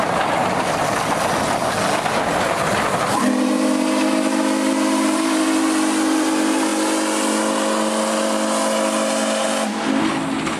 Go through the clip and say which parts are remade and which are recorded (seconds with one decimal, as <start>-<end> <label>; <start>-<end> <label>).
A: 0.0-10.6 recorded